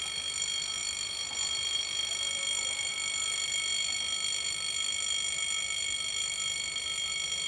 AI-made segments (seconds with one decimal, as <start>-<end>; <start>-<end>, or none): none